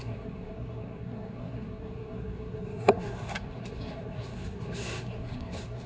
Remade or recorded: remade